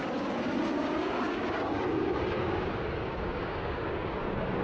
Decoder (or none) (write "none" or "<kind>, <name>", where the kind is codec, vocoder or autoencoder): codec, DAC